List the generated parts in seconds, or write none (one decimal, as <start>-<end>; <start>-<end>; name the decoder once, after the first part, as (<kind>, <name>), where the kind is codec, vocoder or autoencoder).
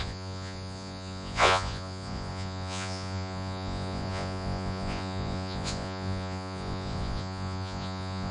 0.0-8.3 (vocoder, Vocos)